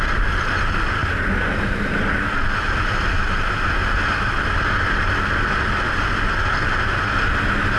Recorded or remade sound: recorded